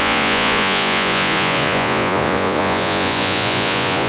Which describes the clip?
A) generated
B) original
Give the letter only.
A